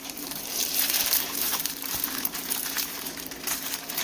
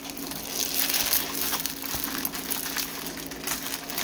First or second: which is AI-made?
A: first